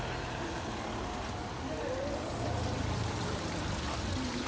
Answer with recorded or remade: recorded